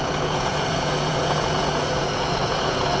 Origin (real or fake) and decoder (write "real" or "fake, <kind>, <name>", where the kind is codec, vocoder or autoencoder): fake, vocoder, Vocos